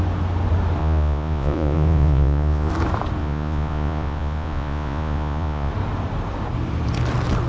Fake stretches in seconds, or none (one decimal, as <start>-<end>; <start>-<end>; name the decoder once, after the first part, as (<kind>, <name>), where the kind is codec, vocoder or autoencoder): 0.8-2.7 (vocoder, Vocos); 3.2-5.7